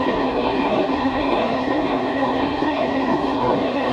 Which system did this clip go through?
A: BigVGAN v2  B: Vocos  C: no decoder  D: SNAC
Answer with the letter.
D